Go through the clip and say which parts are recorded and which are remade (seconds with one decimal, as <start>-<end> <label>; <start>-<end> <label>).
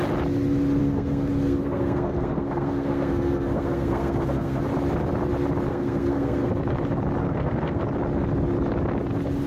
0.0-0.8 recorded; 0.8-4.6 remade; 4.6-5.7 recorded; 5.7-6.5 remade; 6.5-7.2 recorded; 7.2-7.8 remade; 7.8-9.5 recorded